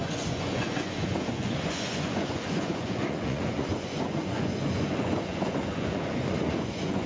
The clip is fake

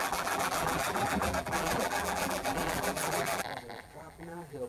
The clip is fake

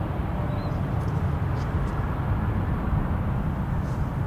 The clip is real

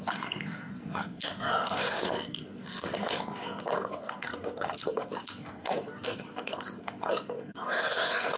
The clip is fake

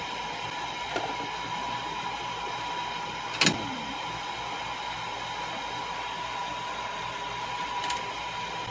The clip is real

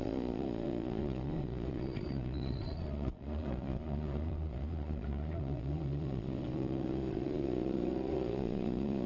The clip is fake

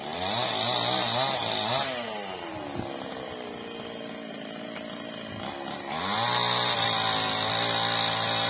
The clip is real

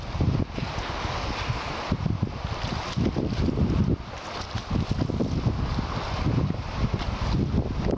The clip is real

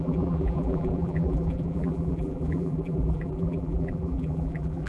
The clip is fake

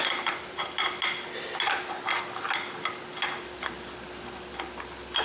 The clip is real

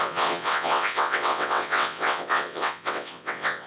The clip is fake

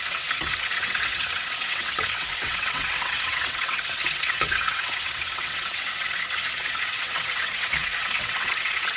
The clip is fake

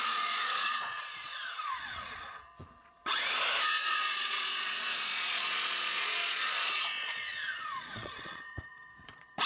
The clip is fake